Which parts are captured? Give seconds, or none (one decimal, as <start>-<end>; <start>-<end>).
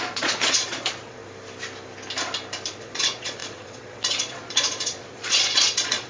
1.2-2.7